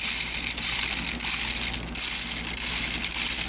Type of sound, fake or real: real